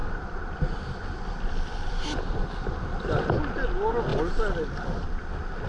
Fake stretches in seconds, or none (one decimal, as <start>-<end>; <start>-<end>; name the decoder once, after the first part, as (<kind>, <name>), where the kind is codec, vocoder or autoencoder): none